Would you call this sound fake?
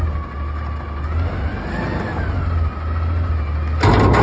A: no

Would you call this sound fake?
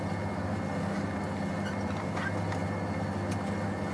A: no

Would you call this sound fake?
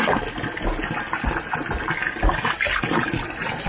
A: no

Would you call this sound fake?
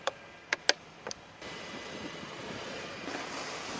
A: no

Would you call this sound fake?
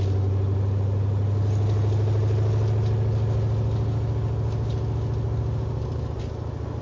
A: no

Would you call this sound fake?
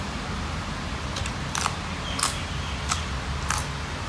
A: no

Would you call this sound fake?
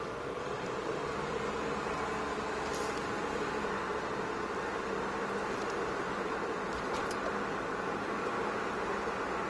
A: no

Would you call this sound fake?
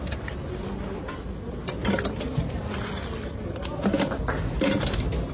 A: no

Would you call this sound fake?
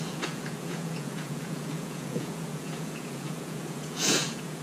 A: yes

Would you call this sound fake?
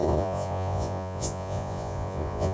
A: yes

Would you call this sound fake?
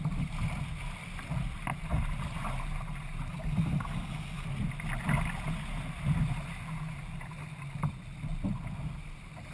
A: no